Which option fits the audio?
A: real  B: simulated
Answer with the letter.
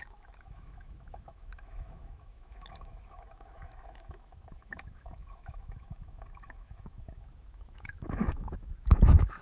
B